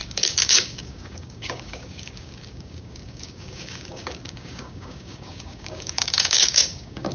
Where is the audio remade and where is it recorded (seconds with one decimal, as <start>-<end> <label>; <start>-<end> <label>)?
0.0-7.1 remade